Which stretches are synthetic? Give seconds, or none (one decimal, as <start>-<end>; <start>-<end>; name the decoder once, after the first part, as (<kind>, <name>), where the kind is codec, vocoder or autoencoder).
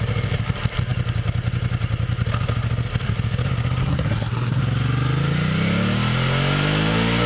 3.8-4.6 (codec, SNAC)